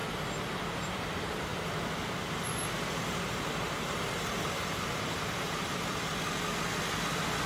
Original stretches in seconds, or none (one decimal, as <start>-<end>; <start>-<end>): 0.0-0.5; 1.5-2.9; 6.1-7.5